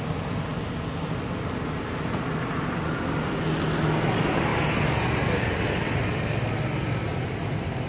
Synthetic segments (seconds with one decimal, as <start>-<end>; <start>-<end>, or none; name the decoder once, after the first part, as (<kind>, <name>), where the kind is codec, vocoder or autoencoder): none